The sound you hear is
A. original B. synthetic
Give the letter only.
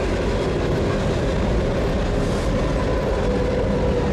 A